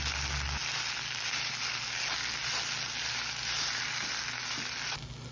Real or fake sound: real